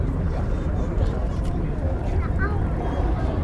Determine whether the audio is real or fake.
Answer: fake